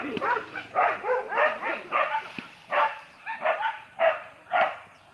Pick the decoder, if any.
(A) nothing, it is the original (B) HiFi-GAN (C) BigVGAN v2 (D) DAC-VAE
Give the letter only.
C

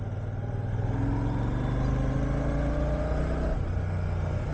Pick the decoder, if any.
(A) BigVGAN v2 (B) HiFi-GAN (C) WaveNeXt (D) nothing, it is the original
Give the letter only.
D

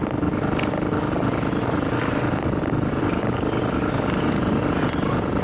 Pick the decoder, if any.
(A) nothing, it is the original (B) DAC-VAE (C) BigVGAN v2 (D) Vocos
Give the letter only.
A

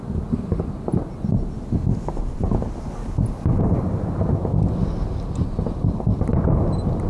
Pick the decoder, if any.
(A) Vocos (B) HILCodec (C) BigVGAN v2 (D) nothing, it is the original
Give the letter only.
D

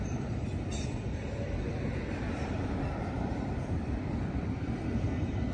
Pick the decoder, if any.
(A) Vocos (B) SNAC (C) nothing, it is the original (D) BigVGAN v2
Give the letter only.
D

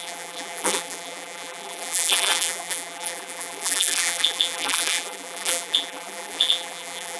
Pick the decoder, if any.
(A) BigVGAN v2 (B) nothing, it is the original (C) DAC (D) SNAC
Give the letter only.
A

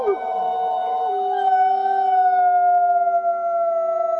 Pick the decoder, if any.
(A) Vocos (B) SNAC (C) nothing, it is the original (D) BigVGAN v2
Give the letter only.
C